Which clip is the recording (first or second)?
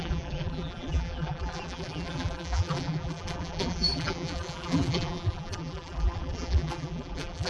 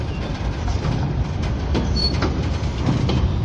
second